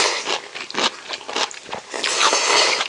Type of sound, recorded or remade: recorded